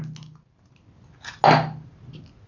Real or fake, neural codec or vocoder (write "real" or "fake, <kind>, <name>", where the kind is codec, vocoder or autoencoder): real